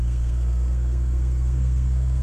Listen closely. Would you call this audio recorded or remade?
remade